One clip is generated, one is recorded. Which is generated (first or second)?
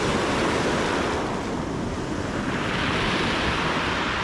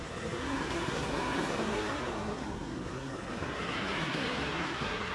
second